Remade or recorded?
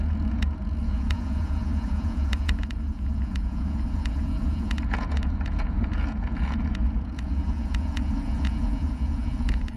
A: remade